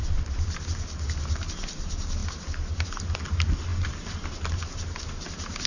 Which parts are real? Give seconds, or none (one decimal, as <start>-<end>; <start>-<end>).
0.6-3.7

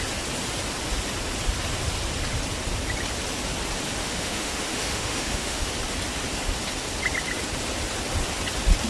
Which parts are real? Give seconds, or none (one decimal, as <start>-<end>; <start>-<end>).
0.0-4.0; 5.7-8.9

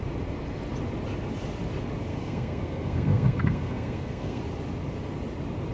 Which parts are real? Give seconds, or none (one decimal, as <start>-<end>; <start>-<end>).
0.0-2.1; 4.4-5.7

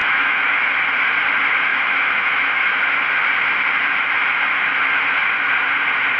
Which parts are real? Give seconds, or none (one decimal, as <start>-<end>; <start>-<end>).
0.7-1.7; 2.8-6.2

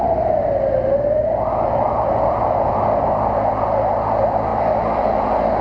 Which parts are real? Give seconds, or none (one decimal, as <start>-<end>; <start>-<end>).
0.0-5.6